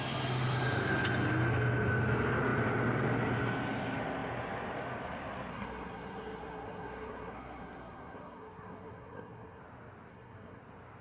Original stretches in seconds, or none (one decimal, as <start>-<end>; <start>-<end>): 0.0-5.5; 9.6-10.1; 10.6-11.0